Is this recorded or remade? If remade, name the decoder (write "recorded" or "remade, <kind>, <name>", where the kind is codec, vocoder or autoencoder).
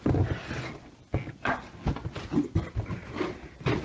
recorded